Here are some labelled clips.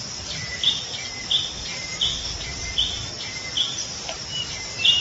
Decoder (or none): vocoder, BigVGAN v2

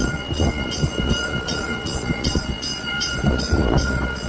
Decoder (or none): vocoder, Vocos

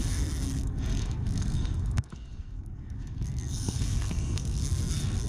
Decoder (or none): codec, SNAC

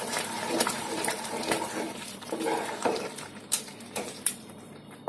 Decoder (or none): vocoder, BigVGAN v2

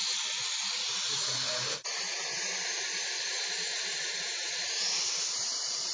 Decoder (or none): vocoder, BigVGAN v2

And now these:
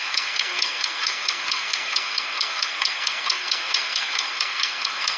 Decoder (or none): codec, SNAC